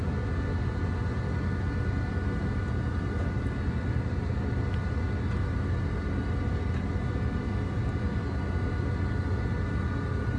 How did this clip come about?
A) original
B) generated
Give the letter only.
A